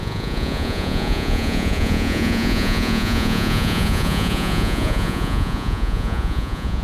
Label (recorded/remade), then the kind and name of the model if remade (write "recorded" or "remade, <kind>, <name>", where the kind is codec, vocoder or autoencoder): remade, vocoder, Vocos